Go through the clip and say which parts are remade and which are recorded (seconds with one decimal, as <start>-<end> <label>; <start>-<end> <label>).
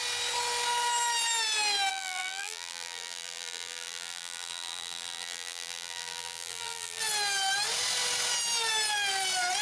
0.0-1.9 recorded; 1.9-7.0 remade; 7.0-9.6 recorded